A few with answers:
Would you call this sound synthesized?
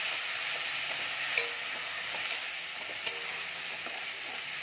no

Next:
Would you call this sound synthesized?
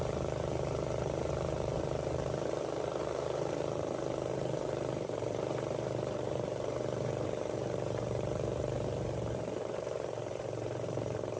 yes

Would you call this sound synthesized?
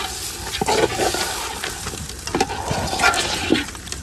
no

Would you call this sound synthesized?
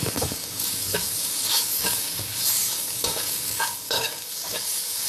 yes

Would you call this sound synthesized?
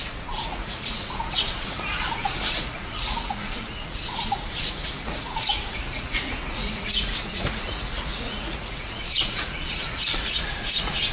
yes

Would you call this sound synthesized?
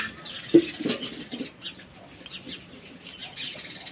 no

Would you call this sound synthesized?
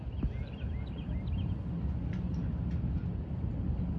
no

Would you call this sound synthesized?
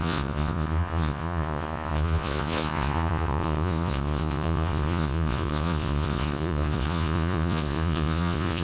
yes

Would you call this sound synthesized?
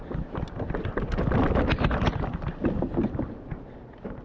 no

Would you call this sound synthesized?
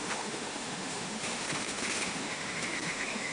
yes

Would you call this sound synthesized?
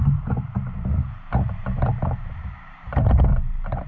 yes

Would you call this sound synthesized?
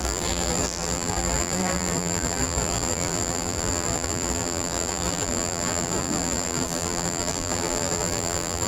yes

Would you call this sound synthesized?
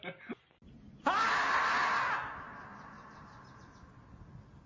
no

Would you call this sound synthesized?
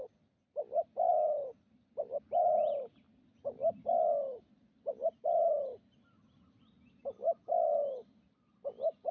no